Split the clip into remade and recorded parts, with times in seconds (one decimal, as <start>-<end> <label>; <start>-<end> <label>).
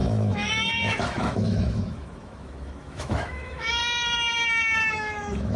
0.0-3.8 remade; 3.8-4.9 recorded; 4.9-5.6 remade